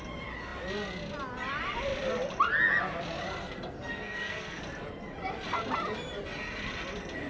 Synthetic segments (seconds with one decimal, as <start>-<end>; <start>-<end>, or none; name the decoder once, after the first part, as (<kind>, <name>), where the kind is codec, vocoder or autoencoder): 3.4-4.6 (codec, SNAC)